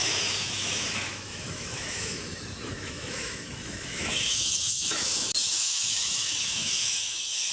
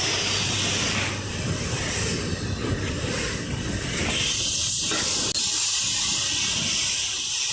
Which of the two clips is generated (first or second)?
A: first